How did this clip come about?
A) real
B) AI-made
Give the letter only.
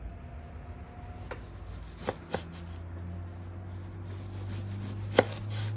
A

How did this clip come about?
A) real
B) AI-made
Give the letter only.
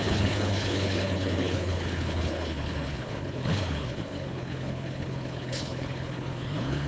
B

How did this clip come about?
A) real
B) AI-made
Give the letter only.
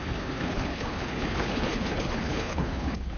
B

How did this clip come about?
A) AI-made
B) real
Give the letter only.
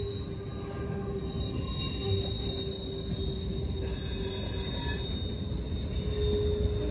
B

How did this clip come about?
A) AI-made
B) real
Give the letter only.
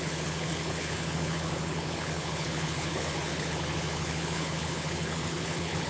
A